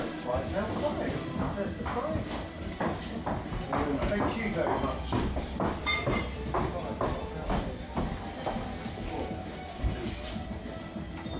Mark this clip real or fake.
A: real